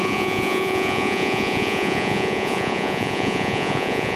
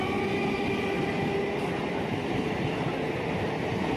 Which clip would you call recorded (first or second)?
second